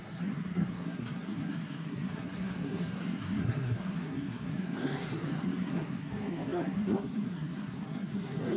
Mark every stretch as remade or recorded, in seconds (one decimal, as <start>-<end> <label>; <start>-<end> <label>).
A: 0.0-8.6 remade